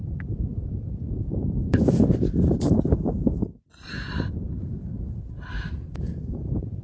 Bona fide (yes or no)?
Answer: no